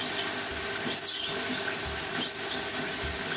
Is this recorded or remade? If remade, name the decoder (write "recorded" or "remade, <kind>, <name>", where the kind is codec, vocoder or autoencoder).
remade, vocoder, BigVGAN v2